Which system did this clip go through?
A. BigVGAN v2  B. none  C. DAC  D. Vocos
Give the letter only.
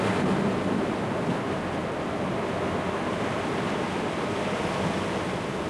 B